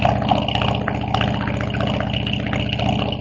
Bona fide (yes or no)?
yes